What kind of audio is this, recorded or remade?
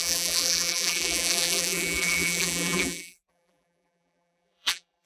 remade